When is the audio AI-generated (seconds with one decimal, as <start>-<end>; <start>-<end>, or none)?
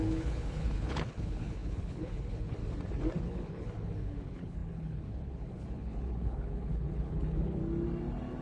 0.0-2.6; 3.2-7.6